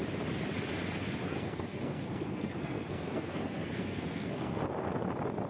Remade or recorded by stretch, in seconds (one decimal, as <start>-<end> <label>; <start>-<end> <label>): 0.0-1.3 recorded; 1.3-4.6 remade; 4.6-5.5 recorded